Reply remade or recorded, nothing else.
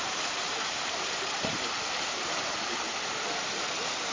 remade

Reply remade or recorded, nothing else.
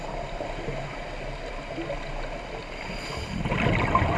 recorded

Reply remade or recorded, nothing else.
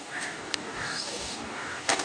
remade